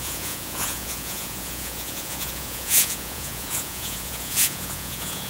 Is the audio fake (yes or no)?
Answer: yes